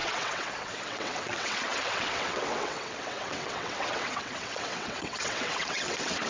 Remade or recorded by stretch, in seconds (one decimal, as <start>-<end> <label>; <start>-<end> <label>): 0.0-6.3 remade